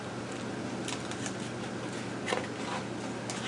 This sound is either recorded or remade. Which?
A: recorded